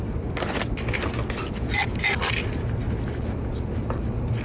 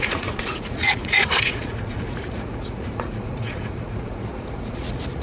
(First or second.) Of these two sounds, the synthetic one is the second